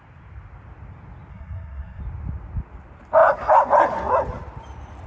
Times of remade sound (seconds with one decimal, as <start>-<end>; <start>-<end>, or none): 1.3-2.0